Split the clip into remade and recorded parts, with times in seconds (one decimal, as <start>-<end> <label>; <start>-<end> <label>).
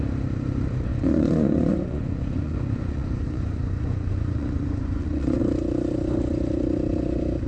0.0-0.9 recorded; 0.9-5.4 remade; 5.4-7.5 recorded